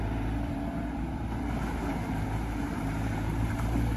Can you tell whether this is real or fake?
fake